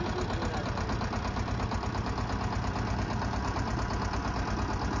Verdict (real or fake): real